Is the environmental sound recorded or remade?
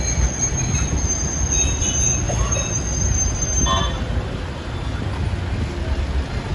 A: recorded